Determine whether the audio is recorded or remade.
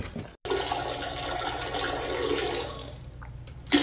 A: recorded